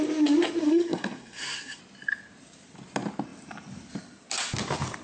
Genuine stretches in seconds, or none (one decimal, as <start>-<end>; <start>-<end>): 0.0-0.6; 1.8-5.0